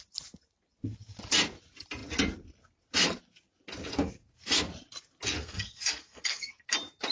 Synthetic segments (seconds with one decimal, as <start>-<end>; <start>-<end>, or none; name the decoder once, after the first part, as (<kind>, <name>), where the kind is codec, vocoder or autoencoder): 5.4-6.5 (codec, SNAC)